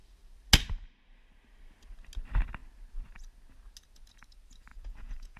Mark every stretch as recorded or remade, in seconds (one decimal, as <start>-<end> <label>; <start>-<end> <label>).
0.0-4.7 recorded; 4.7-5.4 remade